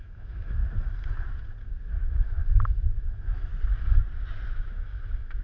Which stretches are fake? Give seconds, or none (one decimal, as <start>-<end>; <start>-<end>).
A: 0.0-0.6; 1.9-2.4; 3.0-3.5; 4.5-5.4